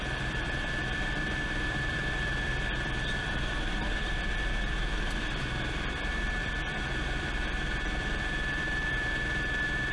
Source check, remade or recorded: remade